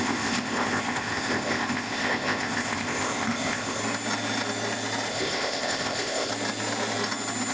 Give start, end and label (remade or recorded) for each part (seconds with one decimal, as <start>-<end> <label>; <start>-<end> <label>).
0.0-3.8 remade; 3.8-5.1 recorded; 5.1-6.3 remade; 6.3-7.5 recorded